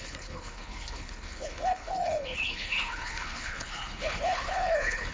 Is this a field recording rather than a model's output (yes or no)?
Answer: no